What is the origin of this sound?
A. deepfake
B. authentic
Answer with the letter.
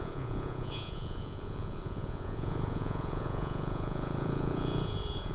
A